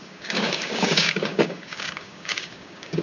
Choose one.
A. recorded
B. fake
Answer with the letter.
B